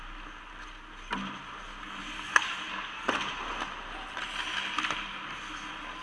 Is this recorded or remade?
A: recorded